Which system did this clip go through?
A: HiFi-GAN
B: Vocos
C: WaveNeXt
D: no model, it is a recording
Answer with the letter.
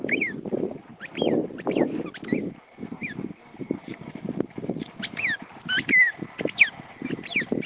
D